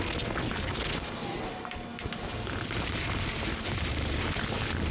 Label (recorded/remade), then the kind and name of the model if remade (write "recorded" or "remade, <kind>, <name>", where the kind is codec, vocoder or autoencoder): recorded